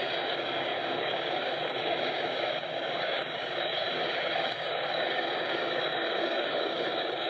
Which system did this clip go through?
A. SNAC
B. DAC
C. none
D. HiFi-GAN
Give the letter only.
B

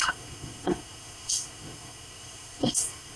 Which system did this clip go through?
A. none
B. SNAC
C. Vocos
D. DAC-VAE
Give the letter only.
B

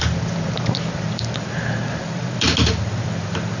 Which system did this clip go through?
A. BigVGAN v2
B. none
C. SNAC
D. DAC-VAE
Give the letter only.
A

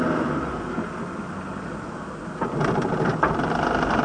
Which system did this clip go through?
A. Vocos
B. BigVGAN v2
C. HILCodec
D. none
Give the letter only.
D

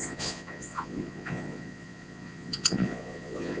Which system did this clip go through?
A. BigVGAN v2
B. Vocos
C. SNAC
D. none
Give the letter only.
B